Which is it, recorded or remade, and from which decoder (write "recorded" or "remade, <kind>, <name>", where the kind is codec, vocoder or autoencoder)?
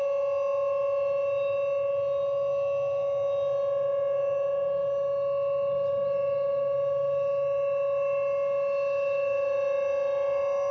recorded